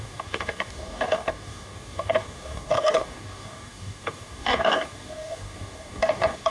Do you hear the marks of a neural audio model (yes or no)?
yes